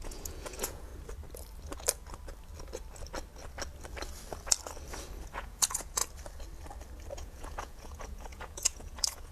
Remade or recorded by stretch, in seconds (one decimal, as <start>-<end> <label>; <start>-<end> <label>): 0.0-0.9 remade; 0.9-5.3 recorded; 5.3-6.0 remade; 6.0-7.1 recorded; 7.1-9.3 remade

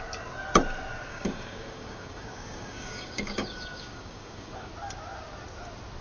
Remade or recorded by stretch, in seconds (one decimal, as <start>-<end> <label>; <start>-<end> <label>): 0.0-1.1 recorded; 1.1-4.7 remade; 4.7-6.0 recorded

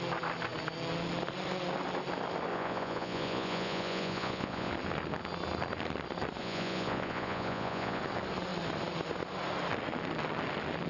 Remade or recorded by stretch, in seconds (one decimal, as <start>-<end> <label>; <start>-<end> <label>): 0.0-2.5 recorded; 2.5-4.7 remade; 4.7-6.4 recorded; 6.4-8.0 remade; 8.0-10.9 recorded

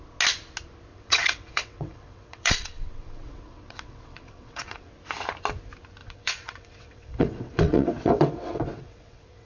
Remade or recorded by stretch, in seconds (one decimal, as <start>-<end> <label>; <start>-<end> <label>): 0.0-0.9 recorded; 0.9-4.9 remade; 4.9-6.0 recorded; 6.0-9.5 remade

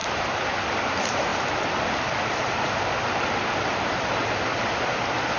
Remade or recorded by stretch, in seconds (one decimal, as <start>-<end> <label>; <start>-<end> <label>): 0.0-5.4 recorded

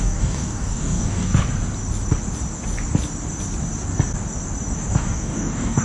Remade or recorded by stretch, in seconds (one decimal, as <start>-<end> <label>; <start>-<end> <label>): 0.0-1.4 remade; 1.4-4.9 recorded; 4.9-5.8 remade

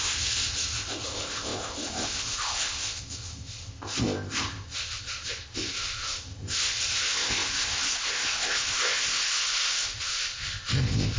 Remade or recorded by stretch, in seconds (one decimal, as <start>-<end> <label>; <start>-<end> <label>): 0.0-11.2 remade